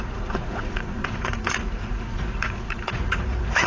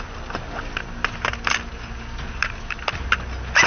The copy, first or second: first